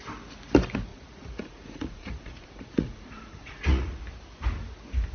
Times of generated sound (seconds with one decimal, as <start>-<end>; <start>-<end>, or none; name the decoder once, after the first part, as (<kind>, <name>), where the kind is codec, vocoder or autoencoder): 0.9-4.0 (vocoder, Vocos)